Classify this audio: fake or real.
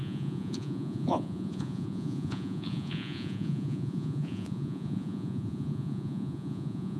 fake